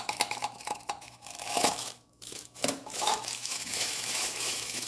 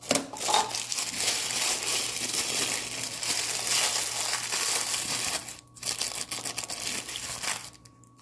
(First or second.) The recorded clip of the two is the second